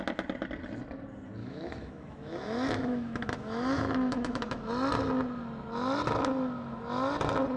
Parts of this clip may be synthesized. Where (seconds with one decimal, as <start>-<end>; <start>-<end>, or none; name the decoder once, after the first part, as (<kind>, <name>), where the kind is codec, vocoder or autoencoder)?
1.4-4.7 (autoencoder, DAC-VAE)